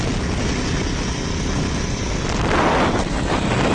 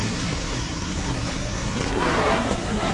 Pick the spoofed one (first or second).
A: second